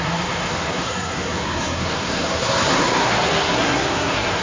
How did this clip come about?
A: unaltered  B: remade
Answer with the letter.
B